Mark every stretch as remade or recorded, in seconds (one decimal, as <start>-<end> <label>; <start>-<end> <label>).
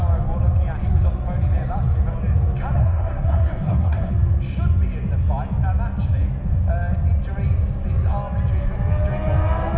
0.0-2.8 recorded; 2.8-4.1 remade; 4.1-9.8 recorded